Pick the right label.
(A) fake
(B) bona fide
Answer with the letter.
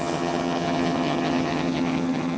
A